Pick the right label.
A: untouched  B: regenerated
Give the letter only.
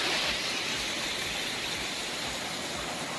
A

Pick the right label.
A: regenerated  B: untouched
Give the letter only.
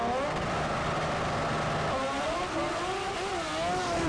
B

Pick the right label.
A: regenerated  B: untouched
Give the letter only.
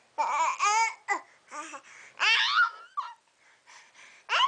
B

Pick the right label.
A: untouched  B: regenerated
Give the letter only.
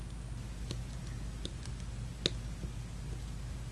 A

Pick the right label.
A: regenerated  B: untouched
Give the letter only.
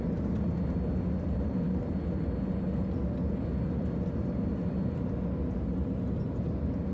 B